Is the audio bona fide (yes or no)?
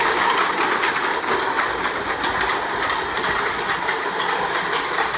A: yes